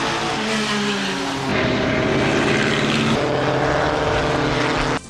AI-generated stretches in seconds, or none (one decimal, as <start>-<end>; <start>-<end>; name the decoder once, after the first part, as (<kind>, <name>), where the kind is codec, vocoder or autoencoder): none